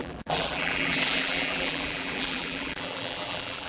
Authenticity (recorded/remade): remade